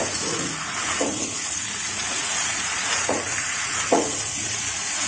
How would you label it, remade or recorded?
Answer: remade